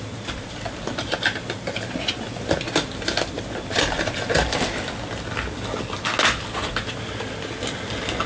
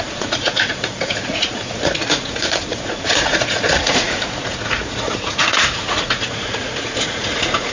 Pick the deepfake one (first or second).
second